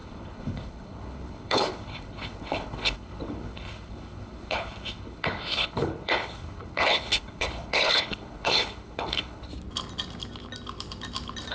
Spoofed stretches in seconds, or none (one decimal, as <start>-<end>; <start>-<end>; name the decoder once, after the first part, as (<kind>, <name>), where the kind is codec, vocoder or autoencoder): 0.0-9.5 (codec, HILCodec)